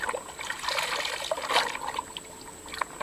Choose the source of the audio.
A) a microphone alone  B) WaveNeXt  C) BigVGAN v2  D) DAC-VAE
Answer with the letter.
A